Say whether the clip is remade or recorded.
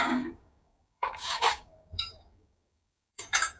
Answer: remade